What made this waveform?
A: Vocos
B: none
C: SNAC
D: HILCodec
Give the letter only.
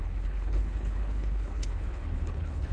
D